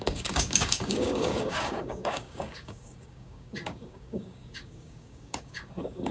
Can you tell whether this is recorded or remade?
remade